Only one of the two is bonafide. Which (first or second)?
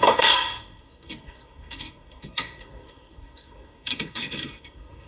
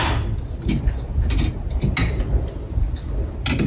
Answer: second